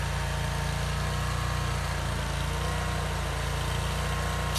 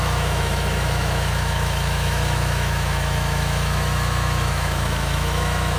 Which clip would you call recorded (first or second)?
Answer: first